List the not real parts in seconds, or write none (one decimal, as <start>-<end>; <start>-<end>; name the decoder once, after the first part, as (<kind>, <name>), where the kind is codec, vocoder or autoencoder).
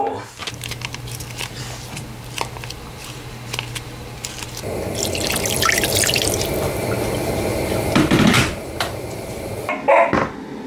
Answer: 0.4-1.0 (vocoder, BigVGAN v2); 7.5-9.5